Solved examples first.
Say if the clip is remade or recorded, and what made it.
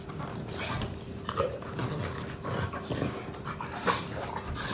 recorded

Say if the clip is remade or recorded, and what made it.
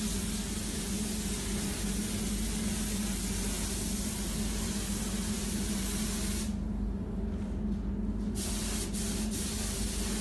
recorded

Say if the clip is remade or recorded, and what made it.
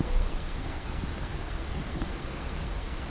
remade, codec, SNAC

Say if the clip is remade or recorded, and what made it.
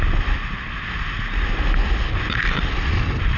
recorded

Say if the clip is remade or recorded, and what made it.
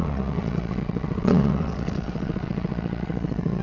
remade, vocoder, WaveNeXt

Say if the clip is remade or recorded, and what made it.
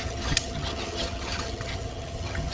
remade, vocoder, HiFi-GAN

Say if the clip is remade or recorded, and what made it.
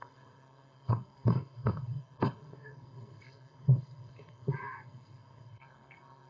remade, codec, SNAC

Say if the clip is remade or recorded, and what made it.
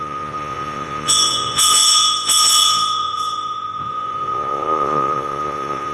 remade, vocoder, Vocos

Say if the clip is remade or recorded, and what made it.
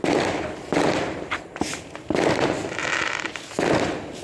recorded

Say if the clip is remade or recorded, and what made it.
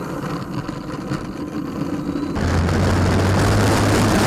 recorded